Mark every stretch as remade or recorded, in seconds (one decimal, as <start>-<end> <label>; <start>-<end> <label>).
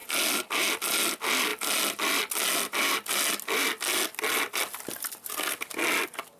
0.0-6.4 recorded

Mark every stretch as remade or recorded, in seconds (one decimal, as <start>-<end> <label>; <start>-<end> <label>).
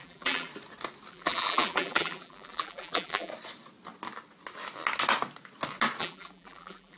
0.0-0.5 remade; 0.5-1.1 recorded; 1.1-3.3 remade; 3.3-6.0 recorded; 6.0-7.0 remade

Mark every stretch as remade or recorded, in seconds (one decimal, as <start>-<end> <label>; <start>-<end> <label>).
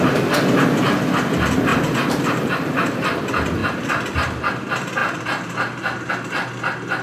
0.0-1.7 recorded; 1.7-2.4 remade; 2.4-5.0 recorded; 5.0-6.1 remade; 6.1-7.0 recorded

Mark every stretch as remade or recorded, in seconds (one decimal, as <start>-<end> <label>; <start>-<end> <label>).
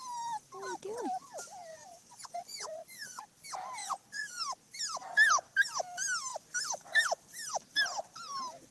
0.0-1.7 recorded; 1.7-3.2 remade; 3.2-3.8 recorded; 3.8-4.4 remade; 4.4-8.7 recorded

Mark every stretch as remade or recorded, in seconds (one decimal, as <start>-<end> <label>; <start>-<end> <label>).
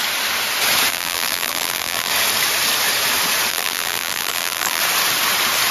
0.0-0.9 recorded; 0.9-2.1 remade; 2.1-3.5 recorded; 3.5-4.8 remade; 4.8-5.7 recorded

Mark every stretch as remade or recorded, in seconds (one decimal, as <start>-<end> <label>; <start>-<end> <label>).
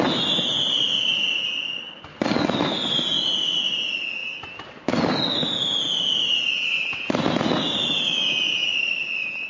0.0-9.5 recorded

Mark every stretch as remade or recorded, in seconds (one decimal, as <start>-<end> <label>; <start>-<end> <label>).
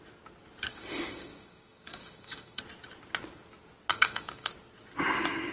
0.0-0.7 recorded; 0.7-2.6 remade; 2.6-3.9 recorded; 3.9-4.5 remade; 4.5-5.5 recorded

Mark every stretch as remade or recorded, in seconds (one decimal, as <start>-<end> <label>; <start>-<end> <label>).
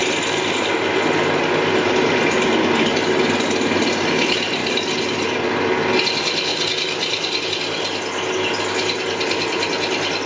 0.0-10.3 recorded